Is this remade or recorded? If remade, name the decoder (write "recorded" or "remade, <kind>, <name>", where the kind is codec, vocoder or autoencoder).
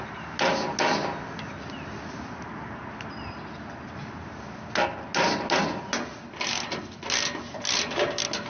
recorded